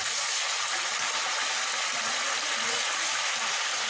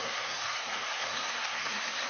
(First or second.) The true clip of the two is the first